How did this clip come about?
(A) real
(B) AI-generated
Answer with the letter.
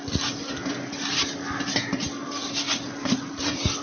A